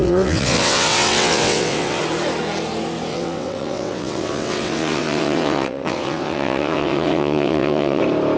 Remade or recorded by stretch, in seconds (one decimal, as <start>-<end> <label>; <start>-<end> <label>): 0.0-2.0 remade; 2.0-3.1 recorded; 3.1-8.0 remade; 8.0-8.4 recorded